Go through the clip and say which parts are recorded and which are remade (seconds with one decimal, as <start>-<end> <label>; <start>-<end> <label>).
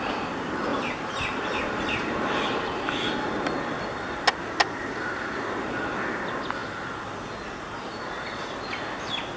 0.0-0.7 recorded; 0.7-2.4 remade; 2.4-9.4 recorded